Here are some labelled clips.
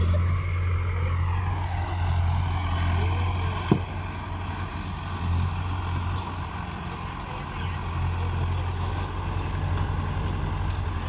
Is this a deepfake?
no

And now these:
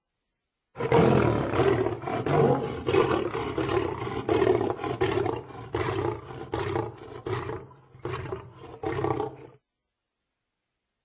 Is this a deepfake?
no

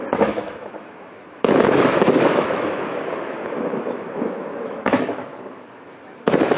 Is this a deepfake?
yes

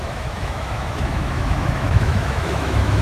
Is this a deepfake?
yes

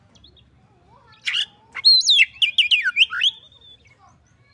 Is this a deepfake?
no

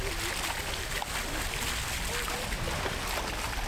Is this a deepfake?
no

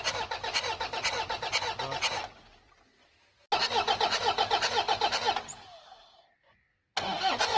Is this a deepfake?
no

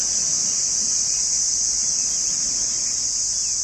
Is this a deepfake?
no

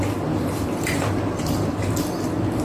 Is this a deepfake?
no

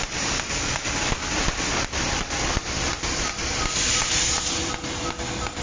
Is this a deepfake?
no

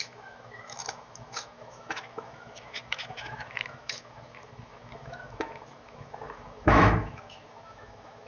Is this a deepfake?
yes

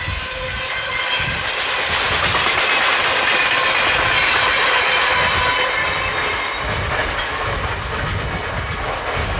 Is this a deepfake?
no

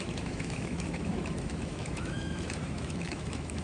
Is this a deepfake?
yes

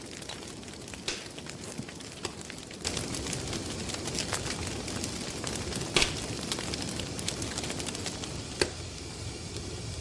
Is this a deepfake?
no